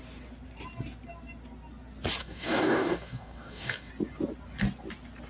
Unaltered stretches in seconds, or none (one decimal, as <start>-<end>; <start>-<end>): 0.0-2.2; 3.9-5.3